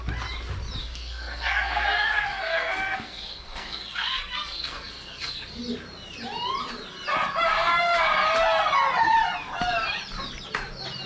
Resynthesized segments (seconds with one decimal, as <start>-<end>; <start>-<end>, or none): 0.8-5.6